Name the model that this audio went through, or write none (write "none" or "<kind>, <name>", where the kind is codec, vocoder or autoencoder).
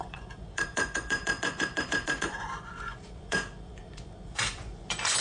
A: vocoder, Vocos